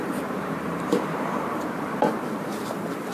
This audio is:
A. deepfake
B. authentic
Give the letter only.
A